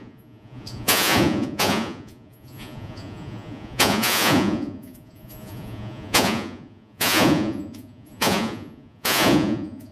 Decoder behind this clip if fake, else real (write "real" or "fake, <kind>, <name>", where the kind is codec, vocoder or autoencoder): fake, vocoder, Vocos